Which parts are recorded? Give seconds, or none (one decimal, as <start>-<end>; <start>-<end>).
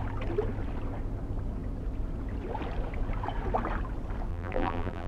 0.0-4.3